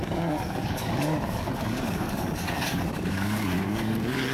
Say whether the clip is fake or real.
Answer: fake